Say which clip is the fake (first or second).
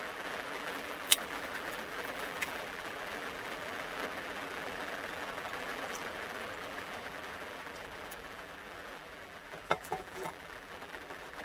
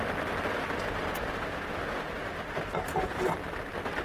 first